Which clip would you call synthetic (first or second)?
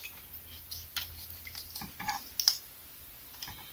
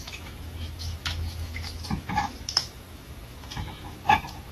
second